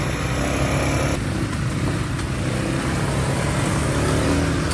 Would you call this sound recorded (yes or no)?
yes